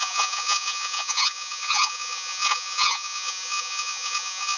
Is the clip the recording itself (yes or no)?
no